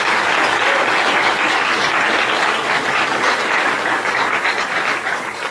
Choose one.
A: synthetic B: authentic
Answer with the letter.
A